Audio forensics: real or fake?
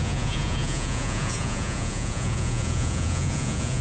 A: fake